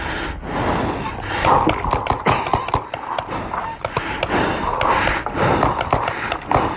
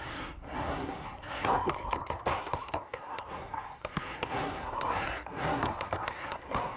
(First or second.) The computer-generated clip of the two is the second